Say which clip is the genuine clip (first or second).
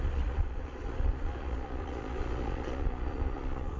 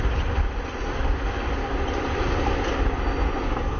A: second